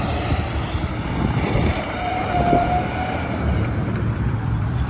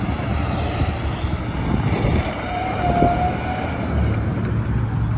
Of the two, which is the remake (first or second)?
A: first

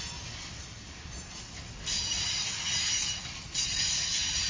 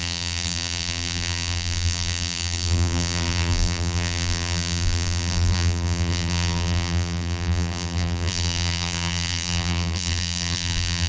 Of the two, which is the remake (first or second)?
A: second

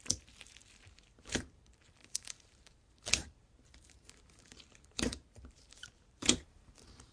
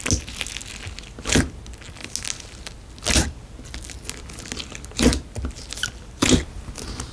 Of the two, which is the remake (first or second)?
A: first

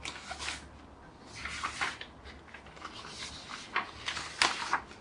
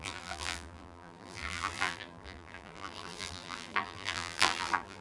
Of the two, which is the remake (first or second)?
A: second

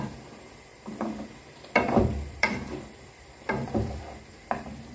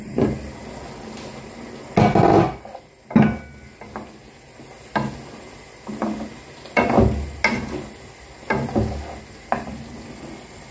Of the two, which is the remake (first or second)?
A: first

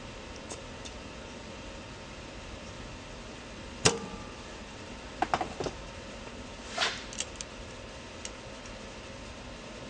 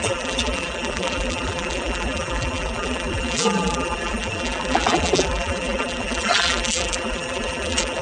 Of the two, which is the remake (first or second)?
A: second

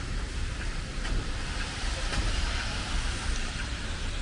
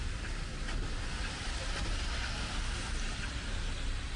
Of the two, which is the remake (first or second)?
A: first